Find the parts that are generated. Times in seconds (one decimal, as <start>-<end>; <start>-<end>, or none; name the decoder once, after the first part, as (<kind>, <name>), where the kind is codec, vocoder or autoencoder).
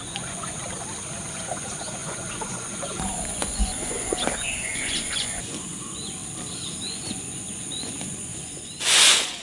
0.0-0.6 (vocoder, Vocos); 1.2-6.2; 6.8-9.4